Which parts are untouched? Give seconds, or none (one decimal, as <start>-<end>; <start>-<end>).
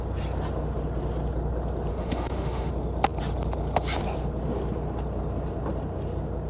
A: 0.0-1.9; 2.7-6.5